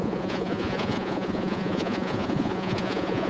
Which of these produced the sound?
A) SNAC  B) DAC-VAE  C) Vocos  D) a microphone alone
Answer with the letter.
C